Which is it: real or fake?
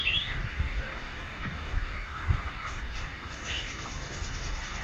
fake